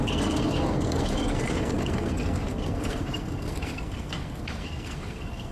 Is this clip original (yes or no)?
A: no